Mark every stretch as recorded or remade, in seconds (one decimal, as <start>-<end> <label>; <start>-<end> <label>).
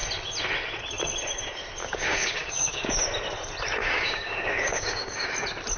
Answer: 0.0-1.8 recorded; 1.8-3.0 remade; 3.0-3.8 recorded; 3.8-5.3 remade; 5.3-5.8 recorded